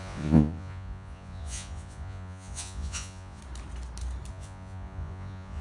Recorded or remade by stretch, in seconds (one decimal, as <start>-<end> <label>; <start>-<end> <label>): 0.0-3.4 remade; 3.4-4.3 recorded; 4.3-5.6 remade